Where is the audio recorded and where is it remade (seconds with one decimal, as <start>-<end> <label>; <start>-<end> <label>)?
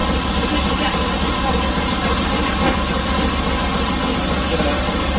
0.0-5.2 recorded